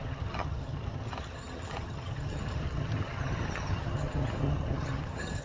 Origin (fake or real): fake